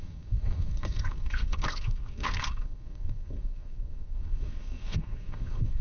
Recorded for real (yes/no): no